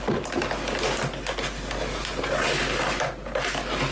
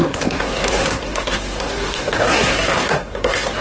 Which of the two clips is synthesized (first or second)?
second